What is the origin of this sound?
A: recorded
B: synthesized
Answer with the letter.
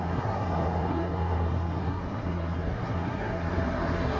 B